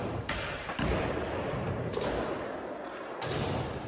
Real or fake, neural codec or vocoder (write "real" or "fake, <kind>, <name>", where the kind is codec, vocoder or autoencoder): real